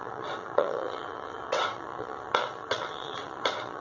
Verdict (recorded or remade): remade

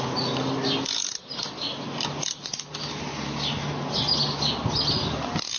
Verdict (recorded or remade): recorded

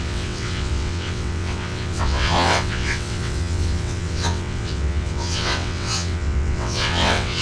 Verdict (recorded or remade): remade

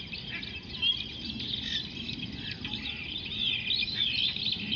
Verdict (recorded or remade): recorded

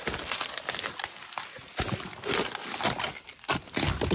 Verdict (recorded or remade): recorded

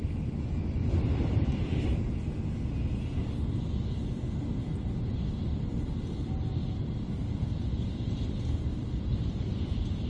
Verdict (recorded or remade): recorded